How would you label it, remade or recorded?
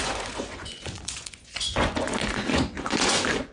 remade